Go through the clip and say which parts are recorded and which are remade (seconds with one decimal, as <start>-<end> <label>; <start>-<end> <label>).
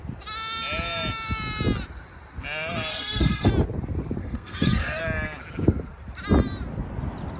0.0-2.9 recorded; 2.9-3.5 remade; 3.5-4.2 recorded; 4.2-5.0 remade; 5.0-7.4 recorded